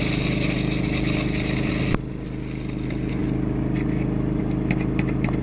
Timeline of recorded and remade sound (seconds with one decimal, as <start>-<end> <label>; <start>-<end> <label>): 0.0-5.4 recorded